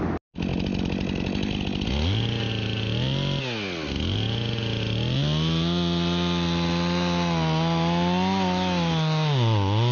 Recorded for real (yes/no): yes